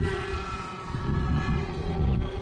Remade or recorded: remade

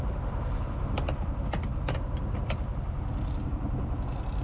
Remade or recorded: recorded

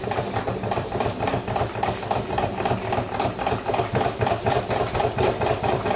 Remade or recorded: remade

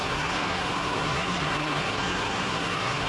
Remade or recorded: remade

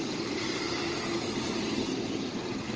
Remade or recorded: recorded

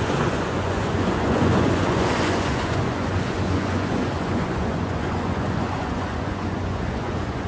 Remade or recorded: remade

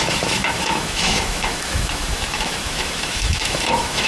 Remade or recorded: remade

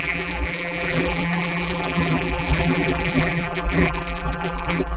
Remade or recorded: remade